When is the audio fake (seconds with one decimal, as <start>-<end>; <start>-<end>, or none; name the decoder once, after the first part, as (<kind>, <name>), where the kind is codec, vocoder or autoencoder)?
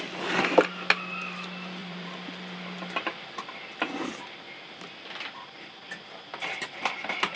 1.8-4.2 (vocoder, BigVGAN v2); 6.3-6.8